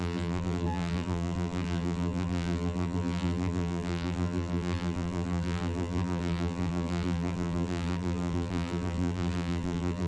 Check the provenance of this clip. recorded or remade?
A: remade